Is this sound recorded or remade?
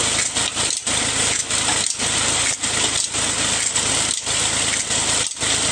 recorded